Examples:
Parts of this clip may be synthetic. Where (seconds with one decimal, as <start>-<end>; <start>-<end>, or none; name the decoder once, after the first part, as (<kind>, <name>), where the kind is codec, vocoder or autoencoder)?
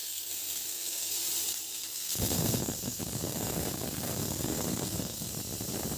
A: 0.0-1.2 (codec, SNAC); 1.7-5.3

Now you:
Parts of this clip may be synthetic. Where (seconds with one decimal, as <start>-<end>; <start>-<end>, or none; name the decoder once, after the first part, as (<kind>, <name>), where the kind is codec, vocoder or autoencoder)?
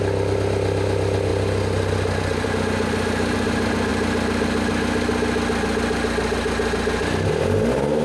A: 1.3-2.5 (vocoder, BigVGAN v2)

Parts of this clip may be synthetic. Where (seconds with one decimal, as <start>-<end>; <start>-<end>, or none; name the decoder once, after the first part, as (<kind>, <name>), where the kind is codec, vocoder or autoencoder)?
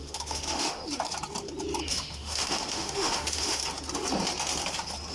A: 0.0-0.8 (autoencoder, DAC-VAE); 1.8-3.6